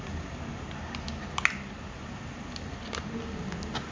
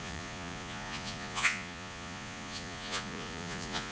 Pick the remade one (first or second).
second